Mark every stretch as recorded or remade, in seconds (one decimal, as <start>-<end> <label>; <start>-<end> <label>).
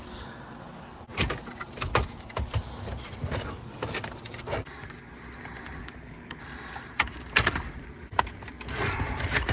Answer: 0.0-5.8 recorded; 5.8-6.4 remade; 6.4-9.5 recorded